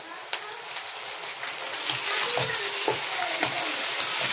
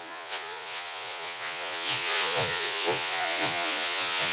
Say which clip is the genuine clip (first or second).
first